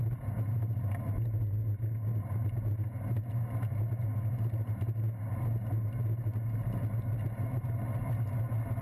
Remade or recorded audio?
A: recorded